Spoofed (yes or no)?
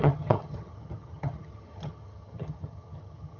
yes